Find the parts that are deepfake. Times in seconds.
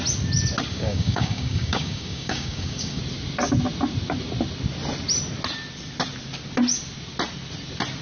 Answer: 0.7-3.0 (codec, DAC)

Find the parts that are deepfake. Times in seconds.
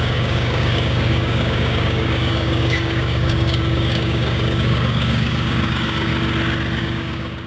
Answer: 0.0-6.1 (codec, DAC); 6.8-7.5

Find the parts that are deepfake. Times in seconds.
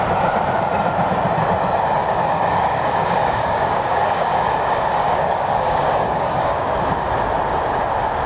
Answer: 2.0-6.8 (codec, DAC)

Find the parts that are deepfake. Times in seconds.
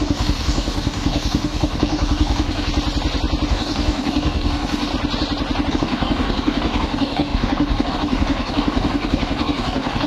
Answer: 0.0-2.7 (codec, DAC); 3.5-4.9; 5.7-10.1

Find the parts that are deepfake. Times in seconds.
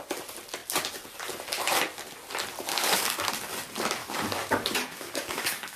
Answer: 2.7-3.3 (codec, DAC); 4.0-5.8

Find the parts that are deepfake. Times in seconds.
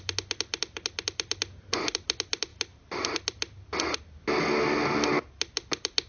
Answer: none